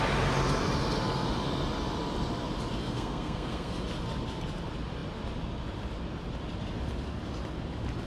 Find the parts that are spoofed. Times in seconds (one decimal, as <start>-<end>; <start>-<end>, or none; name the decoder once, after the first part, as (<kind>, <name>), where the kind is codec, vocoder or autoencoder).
2.8-3.7 (codec, SNAC)

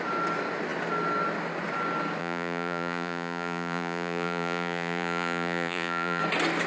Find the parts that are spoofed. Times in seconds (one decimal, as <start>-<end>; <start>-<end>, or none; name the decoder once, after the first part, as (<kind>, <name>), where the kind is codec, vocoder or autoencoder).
2.2-6.2 (vocoder, Vocos)

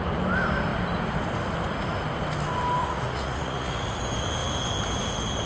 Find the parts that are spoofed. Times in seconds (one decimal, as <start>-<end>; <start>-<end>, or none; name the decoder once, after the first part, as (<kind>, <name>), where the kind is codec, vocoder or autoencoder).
2.8-4.0 (vocoder, Vocos)